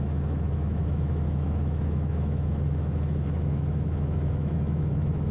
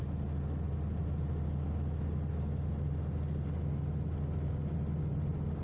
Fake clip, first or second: first